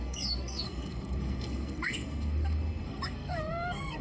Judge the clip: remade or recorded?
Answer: remade